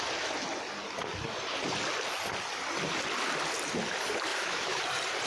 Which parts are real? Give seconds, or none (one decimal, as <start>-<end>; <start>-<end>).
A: 0.0-4.3; 4.8-5.3